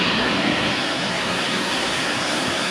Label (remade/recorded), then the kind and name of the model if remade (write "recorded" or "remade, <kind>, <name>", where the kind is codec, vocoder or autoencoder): remade, codec, SNAC